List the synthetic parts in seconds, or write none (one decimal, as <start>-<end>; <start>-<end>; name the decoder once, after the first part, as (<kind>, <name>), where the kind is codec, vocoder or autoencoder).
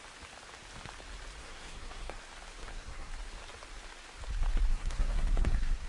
1.4-2.2 (codec, SNAC); 2.6-3.1; 4.7-5.9